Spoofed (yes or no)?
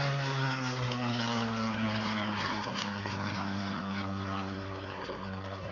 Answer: yes